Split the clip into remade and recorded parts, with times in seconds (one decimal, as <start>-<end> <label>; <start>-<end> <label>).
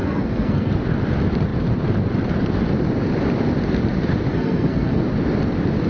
0.0-0.7 remade; 0.7-4.3 recorded; 4.3-5.0 remade; 5.0-5.9 recorded